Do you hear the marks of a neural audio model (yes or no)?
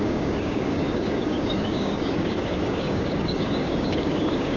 yes